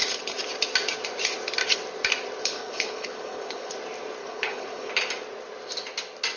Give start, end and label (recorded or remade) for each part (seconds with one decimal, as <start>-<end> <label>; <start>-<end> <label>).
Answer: 0.0-2.4 recorded; 2.4-3.7 remade; 3.7-4.2 recorded; 4.2-4.9 remade; 4.9-6.4 recorded